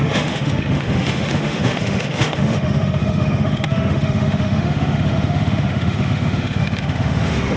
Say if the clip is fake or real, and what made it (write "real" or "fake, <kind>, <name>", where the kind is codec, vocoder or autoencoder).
fake, autoencoder, DAC-VAE